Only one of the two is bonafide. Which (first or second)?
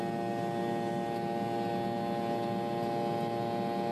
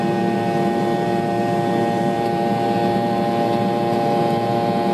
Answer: first